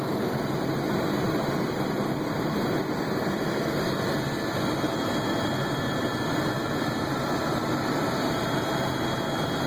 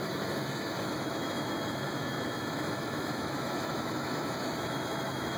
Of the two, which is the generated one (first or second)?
second